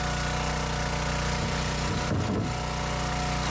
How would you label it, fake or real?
real